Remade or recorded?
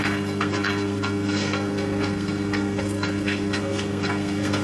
remade